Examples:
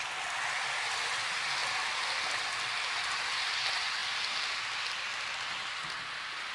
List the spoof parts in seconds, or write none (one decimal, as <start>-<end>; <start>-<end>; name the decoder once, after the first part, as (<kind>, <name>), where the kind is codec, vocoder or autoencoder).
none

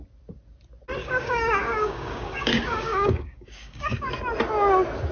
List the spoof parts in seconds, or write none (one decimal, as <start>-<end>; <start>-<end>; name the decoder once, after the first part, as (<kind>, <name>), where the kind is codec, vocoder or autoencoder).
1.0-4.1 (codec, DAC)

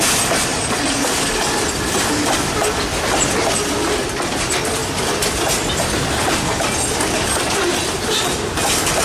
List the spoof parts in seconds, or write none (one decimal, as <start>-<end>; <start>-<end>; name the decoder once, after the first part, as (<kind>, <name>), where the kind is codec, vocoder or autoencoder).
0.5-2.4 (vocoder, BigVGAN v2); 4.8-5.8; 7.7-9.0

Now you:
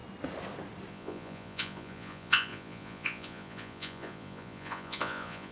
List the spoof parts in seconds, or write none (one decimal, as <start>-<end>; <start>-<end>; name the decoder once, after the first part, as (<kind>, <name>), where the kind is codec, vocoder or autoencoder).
0.9-5.5 (vocoder, Vocos)

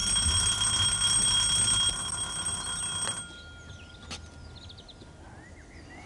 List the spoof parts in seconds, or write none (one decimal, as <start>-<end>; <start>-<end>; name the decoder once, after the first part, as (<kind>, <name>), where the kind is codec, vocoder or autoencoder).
none